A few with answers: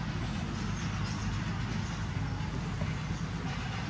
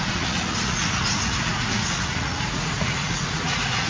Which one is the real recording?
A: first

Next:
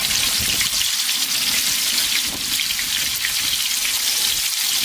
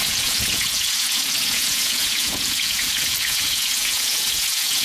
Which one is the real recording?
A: first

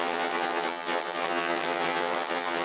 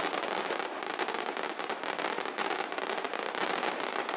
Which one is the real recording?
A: second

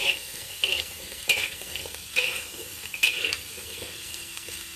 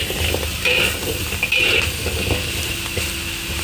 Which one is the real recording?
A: second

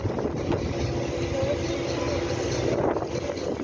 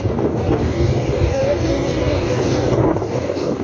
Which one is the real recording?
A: first